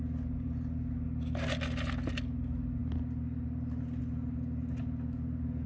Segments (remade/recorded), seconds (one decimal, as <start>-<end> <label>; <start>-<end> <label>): 0.0-5.7 recorded